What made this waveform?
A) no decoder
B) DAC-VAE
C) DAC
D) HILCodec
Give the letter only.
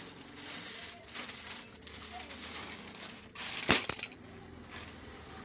A